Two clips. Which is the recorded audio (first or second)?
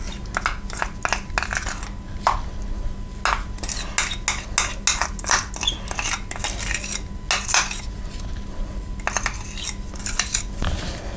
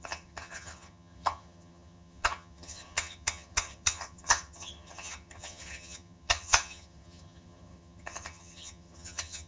first